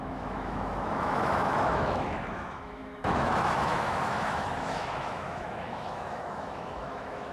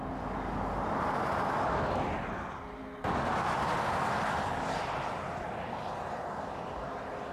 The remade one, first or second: first